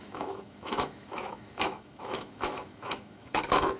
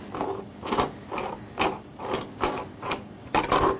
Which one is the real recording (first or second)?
second